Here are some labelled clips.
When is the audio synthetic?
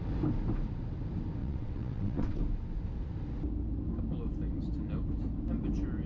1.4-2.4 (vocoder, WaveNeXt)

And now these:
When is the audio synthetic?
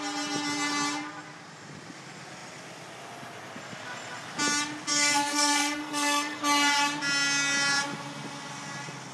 4.9-6.4 (codec, SNAC)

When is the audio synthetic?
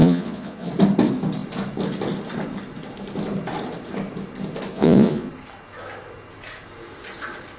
0.0-0.7 (vocoder, Vocos); 4.7-5.3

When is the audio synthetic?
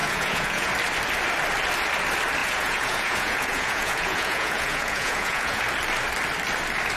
0.0-0.7 (vocoder, Vocos); 2.4-5.6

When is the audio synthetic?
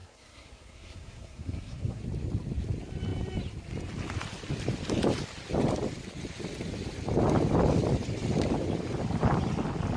0.0-2.0 (codec, SNAC)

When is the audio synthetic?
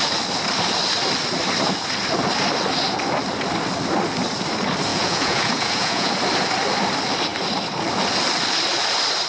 4.9-6.1 (vocoder, Vocos)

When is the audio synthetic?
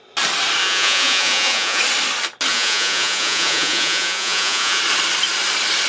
0.6-1.8 (vocoder, Vocos); 2.5-4.8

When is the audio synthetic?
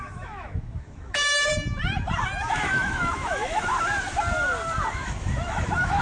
0.0-1.5 (autoencoder, DAC-VAE); 2.5-3.7; 4.9-6.0